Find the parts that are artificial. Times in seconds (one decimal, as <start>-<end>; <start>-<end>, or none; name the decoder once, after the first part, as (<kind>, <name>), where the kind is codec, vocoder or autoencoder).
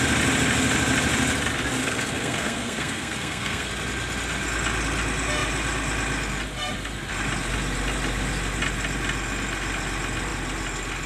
1.8-3.7 (codec, SNAC)